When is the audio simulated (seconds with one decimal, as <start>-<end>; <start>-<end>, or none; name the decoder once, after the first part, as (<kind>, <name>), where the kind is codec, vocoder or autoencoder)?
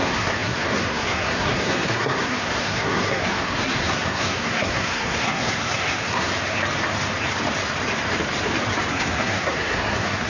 0.0-6.3 (codec, SNAC); 8.9-10.3